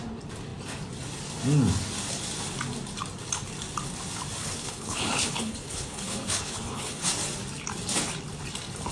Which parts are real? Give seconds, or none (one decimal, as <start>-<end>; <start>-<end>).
0.0-4.4; 7.1-8.9